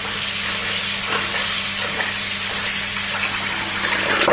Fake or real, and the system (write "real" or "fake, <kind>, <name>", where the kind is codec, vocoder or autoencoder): real